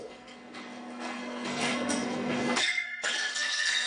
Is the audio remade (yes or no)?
yes